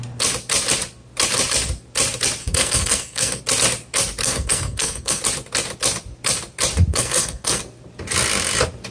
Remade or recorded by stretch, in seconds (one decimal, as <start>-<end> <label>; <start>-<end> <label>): 0.0-2.4 recorded; 2.4-3.4 remade; 3.4-4.2 recorded; 4.2-5.2 remade; 5.2-6.9 recorded; 6.9-7.6 remade; 7.6-8.9 recorded